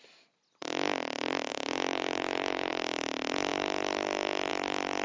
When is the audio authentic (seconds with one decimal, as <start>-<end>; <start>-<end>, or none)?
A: 0.0-1.5; 2.7-5.0